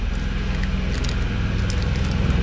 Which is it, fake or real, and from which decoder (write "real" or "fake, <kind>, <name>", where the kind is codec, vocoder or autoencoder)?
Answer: real